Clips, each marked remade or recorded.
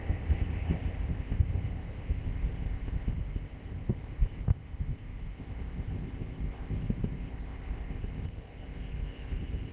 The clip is remade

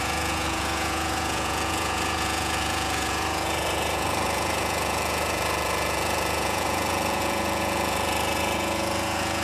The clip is remade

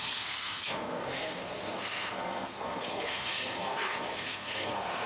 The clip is remade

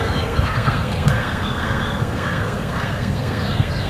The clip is remade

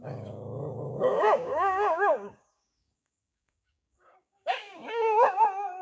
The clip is remade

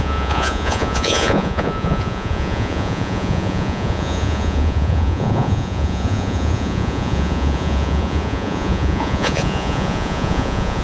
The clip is remade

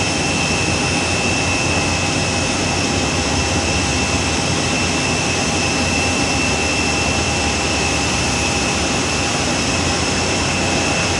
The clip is recorded